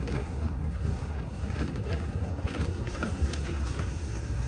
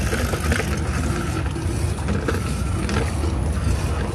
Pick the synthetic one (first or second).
first